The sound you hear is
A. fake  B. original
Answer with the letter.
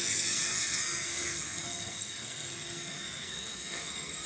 A